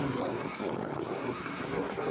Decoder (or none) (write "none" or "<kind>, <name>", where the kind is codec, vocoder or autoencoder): codec, SNAC